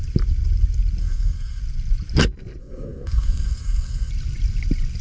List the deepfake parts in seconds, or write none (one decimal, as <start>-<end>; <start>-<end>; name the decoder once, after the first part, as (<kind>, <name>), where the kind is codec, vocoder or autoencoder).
1.0-1.6 (codec, SNAC); 2.6-4.1